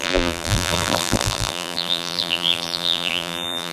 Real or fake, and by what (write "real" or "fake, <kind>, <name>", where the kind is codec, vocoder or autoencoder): fake, vocoder, BigVGAN v2